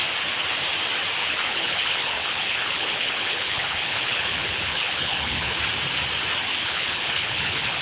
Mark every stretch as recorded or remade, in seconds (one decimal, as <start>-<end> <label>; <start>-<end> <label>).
0.0-1.2 recorded; 1.2-5.6 remade; 5.6-6.5 recorded; 6.5-7.8 remade